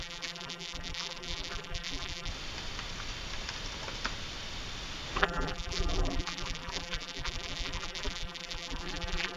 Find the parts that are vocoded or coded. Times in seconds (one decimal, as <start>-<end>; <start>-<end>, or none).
0.0-2.3; 5.2-9.4

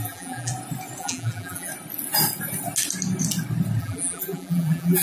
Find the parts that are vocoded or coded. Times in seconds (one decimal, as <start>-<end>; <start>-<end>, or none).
0.0-0.5; 1.0-1.7; 3.8-5.0

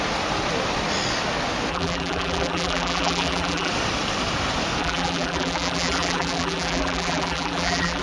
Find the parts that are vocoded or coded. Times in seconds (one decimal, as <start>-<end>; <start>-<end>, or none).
1.7-3.7; 4.8-8.0

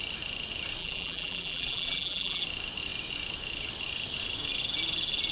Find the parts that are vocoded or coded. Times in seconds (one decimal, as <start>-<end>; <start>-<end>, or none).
0.8-2.4